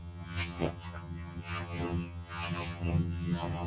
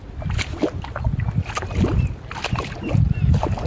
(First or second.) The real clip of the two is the second